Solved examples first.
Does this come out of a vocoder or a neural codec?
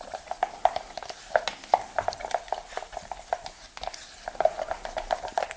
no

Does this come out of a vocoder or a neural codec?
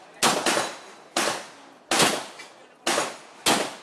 no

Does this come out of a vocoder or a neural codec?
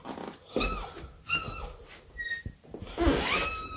no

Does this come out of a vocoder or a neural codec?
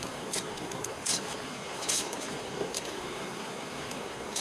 yes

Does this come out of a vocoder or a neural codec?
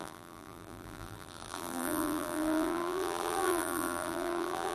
yes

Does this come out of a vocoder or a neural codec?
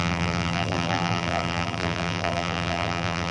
yes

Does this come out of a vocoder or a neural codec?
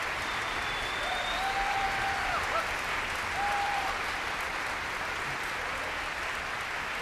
no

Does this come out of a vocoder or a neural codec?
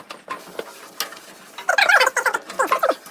no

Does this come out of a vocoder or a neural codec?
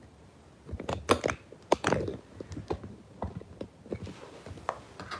no